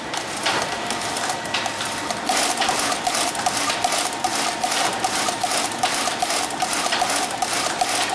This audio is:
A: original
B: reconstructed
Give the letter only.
B